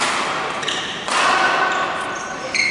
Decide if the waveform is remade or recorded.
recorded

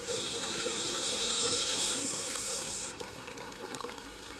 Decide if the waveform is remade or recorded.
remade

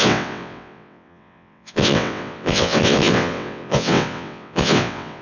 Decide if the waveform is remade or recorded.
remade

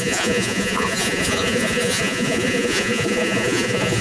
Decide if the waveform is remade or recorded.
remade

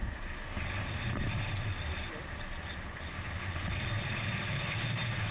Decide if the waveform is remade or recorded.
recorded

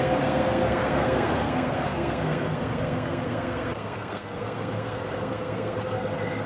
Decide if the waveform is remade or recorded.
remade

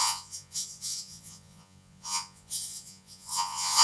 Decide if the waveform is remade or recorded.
remade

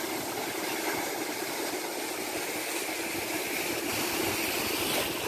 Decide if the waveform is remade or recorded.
recorded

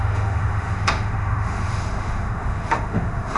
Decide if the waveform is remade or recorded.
remade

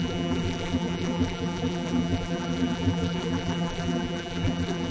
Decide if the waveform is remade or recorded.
remade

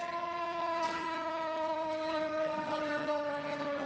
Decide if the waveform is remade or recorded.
remade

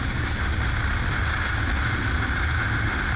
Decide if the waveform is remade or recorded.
recorded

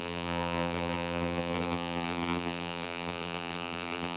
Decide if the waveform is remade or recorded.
remade